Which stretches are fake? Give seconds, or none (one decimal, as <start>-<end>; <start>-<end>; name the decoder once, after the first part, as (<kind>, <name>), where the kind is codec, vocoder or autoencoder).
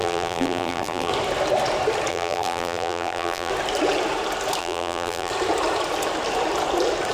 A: 0.0-1.1 (vocoder, BigVGAN v2); 2.1-3.5; 4.6-5.3